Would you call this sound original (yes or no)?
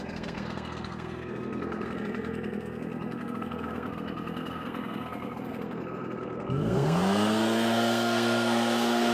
no